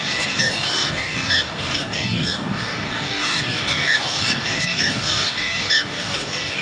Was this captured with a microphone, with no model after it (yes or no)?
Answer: no